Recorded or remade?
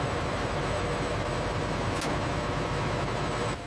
recorded